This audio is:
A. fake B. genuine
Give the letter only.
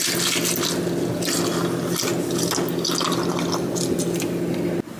B